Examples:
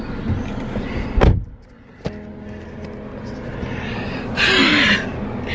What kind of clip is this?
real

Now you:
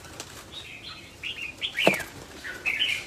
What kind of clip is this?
real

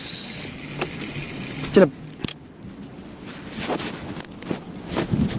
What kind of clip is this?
real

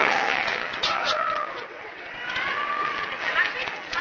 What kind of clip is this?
fake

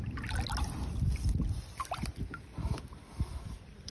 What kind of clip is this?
real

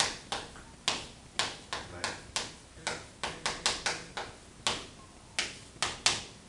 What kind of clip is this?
real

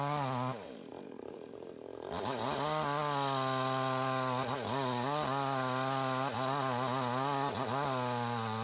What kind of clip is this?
real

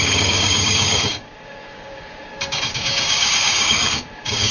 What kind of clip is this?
fake